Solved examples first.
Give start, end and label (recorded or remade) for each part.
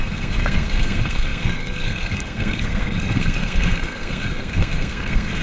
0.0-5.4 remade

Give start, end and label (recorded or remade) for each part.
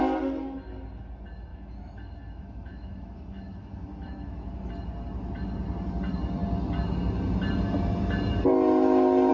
0.0-1.5 recorded; 1.5-4.7 remade; 4.7-9.3 recorded